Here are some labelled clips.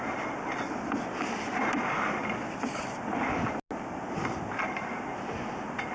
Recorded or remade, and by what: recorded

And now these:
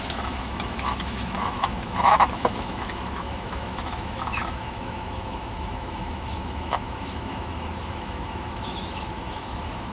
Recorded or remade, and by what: remade, autoencoder, DAC-VAE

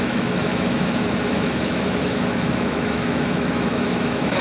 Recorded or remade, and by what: remade, autoencoder, DAC-VAE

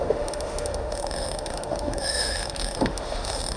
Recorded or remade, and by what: remade, autoencoder, DAC-VAE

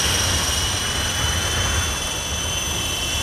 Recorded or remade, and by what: recorded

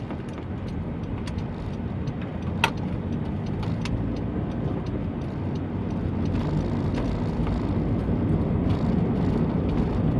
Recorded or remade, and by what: recorded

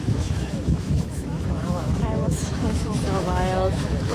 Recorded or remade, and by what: remade, autoencoder, DAC-VAE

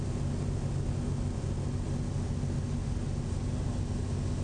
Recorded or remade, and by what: recorded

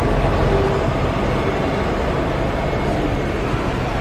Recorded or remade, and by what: recorded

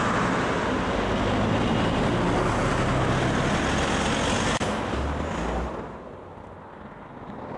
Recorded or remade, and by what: recorded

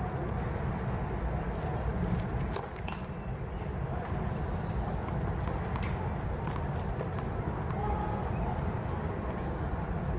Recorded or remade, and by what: recorded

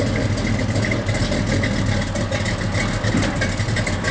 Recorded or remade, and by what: recorded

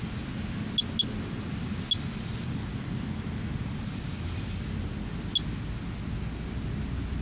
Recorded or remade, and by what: recorded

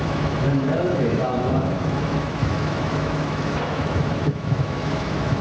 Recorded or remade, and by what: remade, autoencoder, DAC-VAE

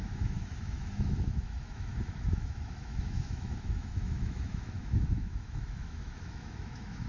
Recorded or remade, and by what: remade, autoencoder, DAC-VAE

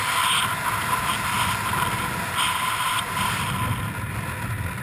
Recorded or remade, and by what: recorded